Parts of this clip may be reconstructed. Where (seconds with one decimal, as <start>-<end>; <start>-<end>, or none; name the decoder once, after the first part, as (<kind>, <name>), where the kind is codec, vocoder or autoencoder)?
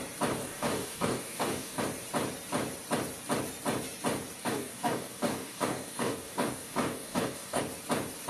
0.4-1.8 (codec, DAC); 4.4-7.6